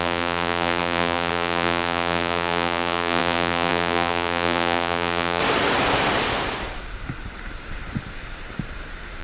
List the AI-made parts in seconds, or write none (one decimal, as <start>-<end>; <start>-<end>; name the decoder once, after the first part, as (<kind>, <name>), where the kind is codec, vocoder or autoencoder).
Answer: 0.0-5.4 (vocoder, BigVGAN v2)